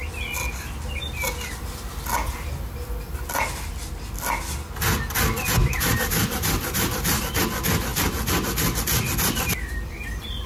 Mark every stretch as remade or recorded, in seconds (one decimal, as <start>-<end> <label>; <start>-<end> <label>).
0.0-5.6 recorded; 5.6-7.2 remade; 7.2-10.5 recorded